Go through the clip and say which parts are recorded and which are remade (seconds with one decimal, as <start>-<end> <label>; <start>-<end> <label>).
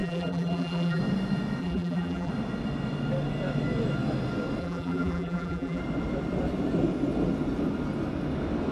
0.0-1.0 remade; 1.0-1.6 recorded; 1.6-2.3 remade; 2.3-4.6 recorded; 4.6-5.8 remade; 5.8-8.7 recorded